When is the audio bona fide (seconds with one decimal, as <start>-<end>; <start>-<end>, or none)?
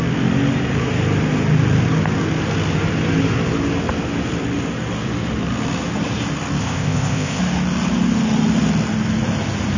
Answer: 0.0-6.6; 7.4-9.8